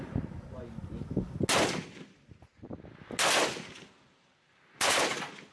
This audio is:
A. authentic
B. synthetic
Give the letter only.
A